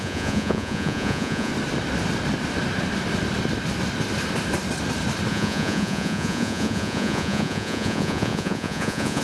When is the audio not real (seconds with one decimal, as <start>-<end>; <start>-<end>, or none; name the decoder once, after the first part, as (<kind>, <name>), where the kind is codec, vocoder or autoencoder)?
0.0-1.5 (vocoder, Vocos); 5.3-9.2